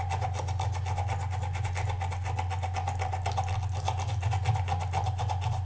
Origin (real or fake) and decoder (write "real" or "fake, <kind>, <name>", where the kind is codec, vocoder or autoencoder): real